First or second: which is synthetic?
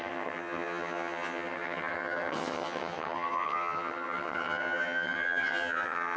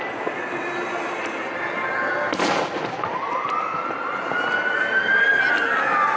first